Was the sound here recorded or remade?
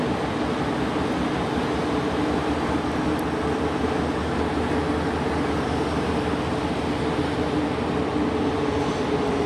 recorded